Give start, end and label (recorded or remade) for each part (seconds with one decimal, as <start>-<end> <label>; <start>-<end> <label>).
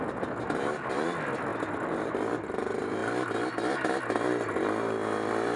0.0-5.6 recorded